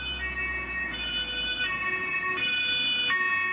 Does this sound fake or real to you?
real